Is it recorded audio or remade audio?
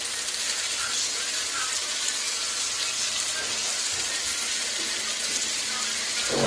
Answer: recorded